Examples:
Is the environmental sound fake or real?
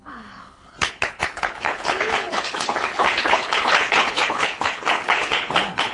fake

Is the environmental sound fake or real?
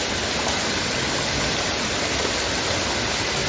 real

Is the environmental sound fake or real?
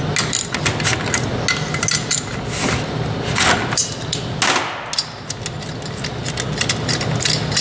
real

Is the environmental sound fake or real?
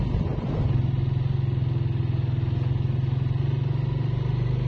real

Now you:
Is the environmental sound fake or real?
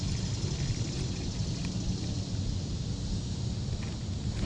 real